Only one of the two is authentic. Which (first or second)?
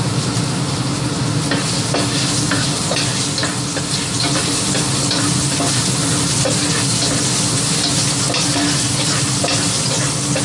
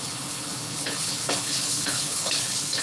first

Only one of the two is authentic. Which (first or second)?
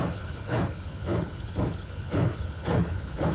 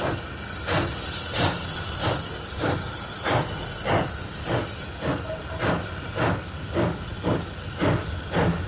second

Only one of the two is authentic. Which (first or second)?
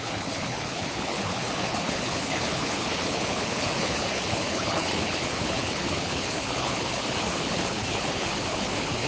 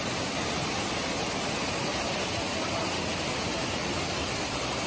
second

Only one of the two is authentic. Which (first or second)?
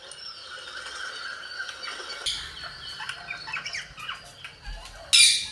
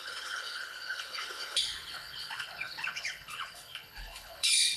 first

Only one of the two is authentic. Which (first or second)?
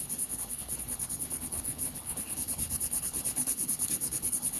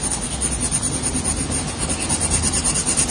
second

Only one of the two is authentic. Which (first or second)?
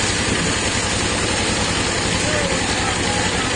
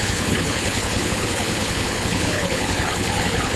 first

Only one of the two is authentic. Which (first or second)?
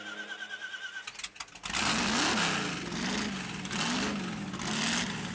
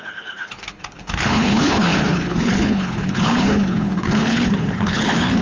first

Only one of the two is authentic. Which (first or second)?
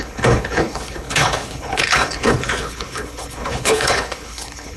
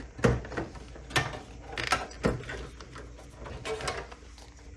second